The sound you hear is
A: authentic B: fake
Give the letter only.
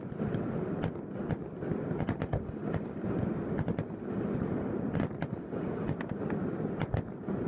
A